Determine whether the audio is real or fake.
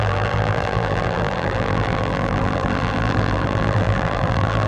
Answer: fake